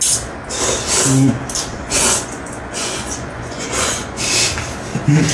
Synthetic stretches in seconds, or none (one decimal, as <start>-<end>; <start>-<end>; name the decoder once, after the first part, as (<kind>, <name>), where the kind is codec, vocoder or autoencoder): 1.7-4.2 (vocoder, Vocos)